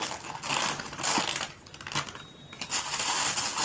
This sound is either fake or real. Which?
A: real